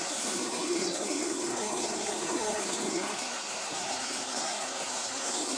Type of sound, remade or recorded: remade